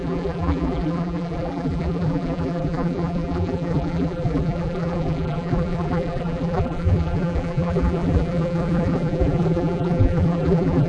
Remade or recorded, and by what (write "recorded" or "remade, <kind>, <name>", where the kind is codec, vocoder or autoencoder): remade, vocoder, BigVGAN v2